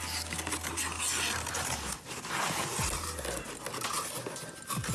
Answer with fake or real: real